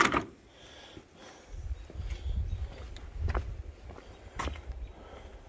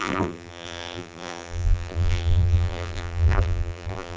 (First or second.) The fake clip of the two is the second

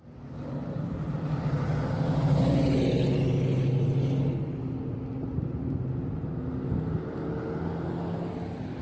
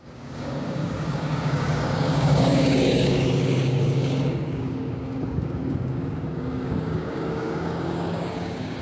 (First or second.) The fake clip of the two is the second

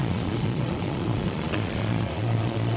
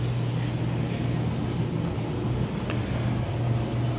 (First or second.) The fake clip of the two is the first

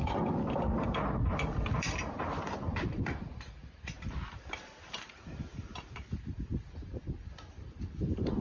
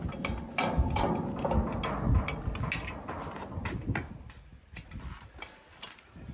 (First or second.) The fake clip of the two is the first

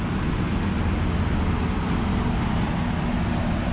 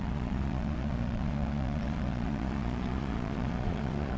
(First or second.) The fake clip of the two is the second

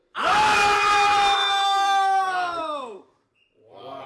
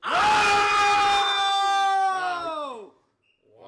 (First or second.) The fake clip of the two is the first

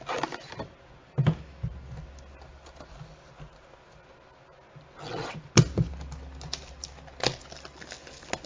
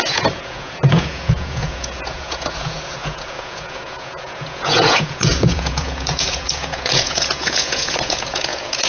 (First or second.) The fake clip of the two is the second